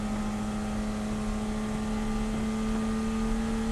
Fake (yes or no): no